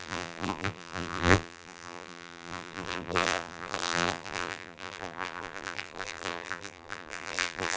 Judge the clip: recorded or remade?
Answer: remade